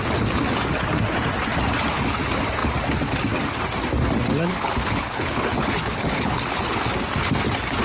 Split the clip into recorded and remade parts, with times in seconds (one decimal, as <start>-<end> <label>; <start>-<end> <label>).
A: 0.0-4.5 recorded; 4.5-6.9 remade; 6.9-7.8 recorded